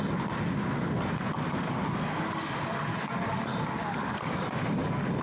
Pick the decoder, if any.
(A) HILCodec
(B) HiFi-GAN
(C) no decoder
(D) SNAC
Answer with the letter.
C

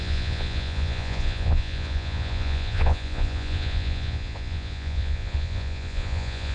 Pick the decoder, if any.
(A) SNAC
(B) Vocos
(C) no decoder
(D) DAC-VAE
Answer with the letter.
B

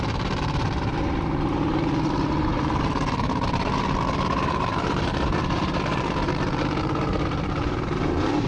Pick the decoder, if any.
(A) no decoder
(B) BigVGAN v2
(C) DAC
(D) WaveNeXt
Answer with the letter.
B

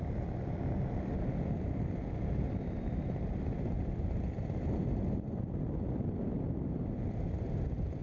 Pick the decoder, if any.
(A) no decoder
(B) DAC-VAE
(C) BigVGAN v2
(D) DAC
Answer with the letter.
A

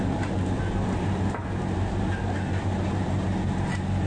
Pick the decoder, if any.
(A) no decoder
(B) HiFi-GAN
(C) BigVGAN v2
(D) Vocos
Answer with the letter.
A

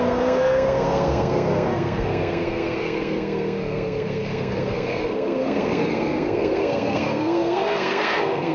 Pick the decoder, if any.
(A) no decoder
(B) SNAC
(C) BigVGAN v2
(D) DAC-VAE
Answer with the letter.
B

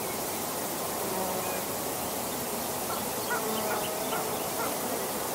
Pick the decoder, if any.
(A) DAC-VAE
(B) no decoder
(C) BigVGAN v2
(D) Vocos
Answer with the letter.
B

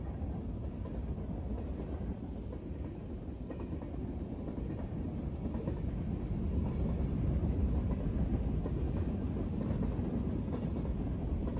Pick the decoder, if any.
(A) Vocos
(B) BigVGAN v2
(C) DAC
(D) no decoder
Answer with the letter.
D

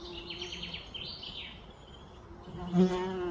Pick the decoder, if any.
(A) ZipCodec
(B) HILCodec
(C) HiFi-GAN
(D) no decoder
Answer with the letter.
D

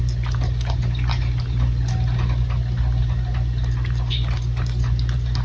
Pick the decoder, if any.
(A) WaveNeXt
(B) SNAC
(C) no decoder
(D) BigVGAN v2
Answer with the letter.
C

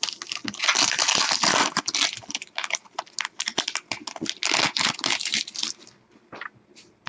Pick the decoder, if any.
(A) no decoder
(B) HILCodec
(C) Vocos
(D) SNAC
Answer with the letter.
A